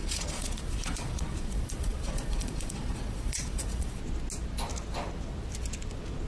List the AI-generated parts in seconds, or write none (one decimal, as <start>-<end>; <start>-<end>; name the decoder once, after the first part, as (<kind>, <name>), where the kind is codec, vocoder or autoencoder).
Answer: 0.0-4.0 (vocoder, Vocos)